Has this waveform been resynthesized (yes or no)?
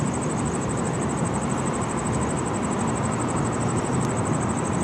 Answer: yes